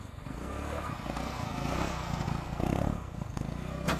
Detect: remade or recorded remade